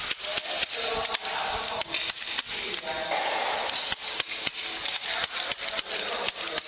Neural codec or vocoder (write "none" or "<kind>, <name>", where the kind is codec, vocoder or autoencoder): none